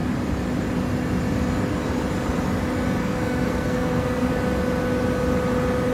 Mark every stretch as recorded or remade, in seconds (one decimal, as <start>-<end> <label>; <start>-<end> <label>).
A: 0.0-3.0 recorded; 3.0-4.3 remade; 4.3-5.9 recorded